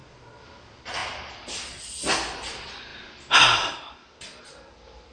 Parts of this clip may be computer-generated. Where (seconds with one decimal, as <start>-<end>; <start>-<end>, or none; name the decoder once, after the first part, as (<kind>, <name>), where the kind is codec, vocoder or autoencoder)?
none